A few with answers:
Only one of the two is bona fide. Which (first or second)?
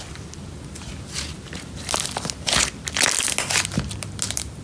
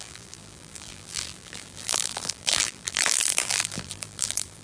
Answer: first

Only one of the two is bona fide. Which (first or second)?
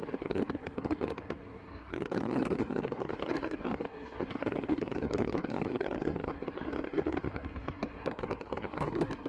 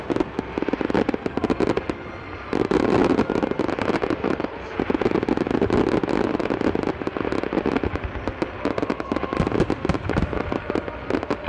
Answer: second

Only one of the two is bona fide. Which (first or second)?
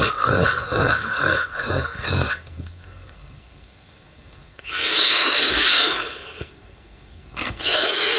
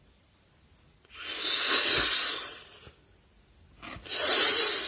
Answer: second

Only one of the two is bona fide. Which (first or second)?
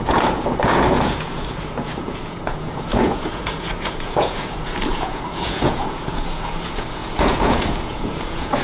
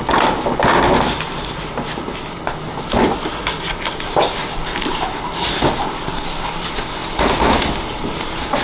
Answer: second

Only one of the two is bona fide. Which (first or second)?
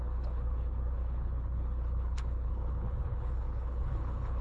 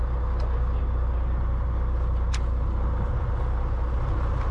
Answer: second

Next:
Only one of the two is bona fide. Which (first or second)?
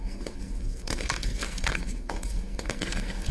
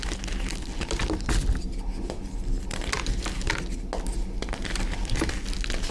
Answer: second